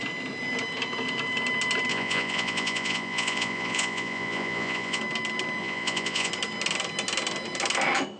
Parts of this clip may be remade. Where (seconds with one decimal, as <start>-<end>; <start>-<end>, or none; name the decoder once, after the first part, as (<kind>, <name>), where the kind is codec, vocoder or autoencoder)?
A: 1.9-5.0 (vocoder, Vocos); 5.6-6.3